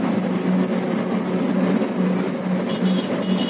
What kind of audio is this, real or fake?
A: real